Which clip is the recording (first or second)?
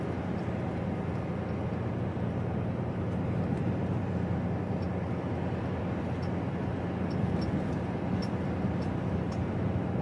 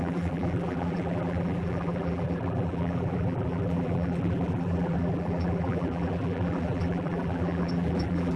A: first